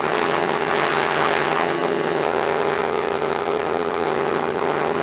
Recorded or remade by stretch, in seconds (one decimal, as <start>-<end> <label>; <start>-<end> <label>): 0.0-5.0 remade